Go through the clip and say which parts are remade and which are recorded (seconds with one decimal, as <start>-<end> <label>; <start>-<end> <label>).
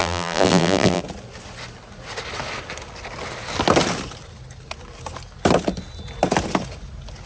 0.0-1.0 remade; 1.0-7.3 recorded